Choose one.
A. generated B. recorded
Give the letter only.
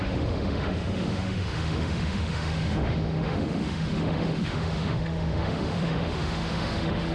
A